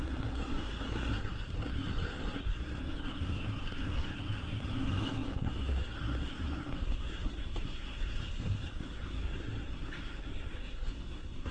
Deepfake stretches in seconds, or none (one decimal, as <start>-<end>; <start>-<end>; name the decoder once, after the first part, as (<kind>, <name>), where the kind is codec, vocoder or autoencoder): 0.0-11.5 (codec, SNAC)